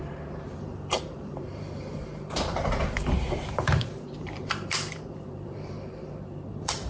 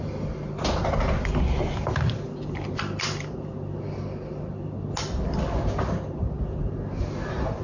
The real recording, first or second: second